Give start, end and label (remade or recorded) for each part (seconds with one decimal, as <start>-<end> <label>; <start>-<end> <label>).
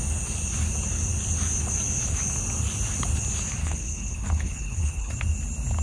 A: 0.0-3.6 recorded; 3.6-5.1 remade; 5.1-5.8 recorded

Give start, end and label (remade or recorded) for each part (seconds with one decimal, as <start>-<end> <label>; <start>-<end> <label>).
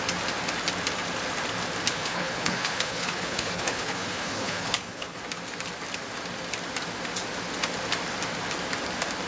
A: 0.0-1.9 recorded; 1.9-5.2 remade; 5.2-9.3 recorded